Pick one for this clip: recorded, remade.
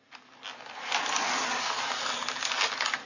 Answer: recorded